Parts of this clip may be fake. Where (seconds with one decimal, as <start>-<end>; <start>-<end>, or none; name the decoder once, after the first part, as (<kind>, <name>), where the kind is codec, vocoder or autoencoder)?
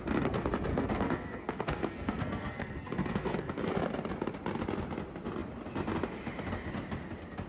0.7-3.7 (codec, SNAC)